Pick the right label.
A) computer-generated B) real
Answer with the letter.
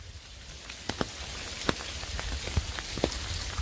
B